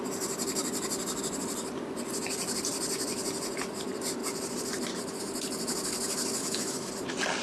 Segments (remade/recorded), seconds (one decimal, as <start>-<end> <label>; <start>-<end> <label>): 0.0-6.4 recorded; 6.4-6.9 remade; 6.9-7.4 recorded